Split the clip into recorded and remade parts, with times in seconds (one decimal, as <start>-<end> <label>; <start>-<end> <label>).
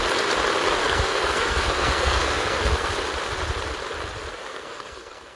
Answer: 0.0-0.8 recorded; 0.8-2.9 remade; 2.9-4.3 recorded; 4.3-5.4 remade